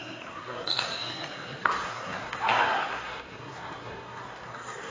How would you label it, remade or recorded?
remade